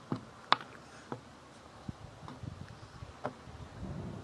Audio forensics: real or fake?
real